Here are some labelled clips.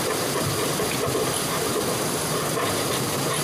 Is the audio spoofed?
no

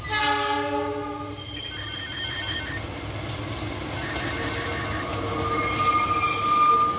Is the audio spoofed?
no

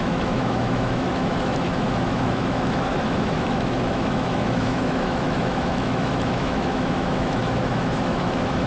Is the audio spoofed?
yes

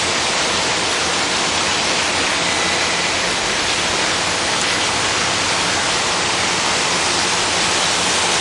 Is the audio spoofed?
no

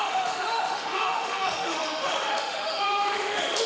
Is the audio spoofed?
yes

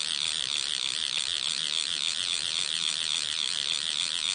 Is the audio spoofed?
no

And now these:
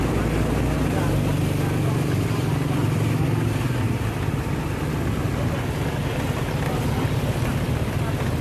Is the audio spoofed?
no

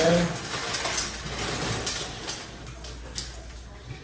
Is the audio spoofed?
no